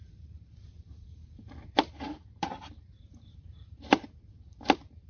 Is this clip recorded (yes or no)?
no